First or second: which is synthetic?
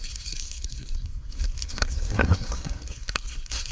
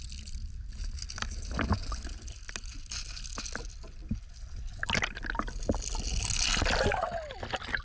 first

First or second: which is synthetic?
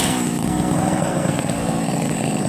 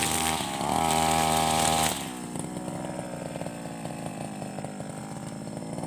first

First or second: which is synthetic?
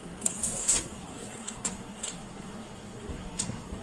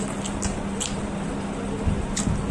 first